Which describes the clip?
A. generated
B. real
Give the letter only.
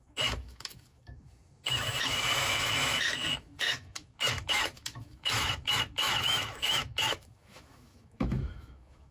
A